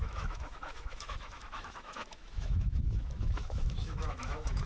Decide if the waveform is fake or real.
fake